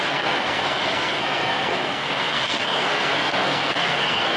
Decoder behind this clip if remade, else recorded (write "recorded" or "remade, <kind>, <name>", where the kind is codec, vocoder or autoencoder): remade, codec, SNAC